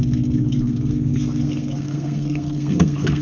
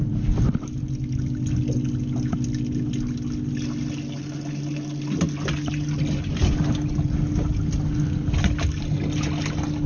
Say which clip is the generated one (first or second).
first